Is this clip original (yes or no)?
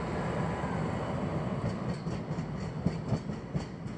yes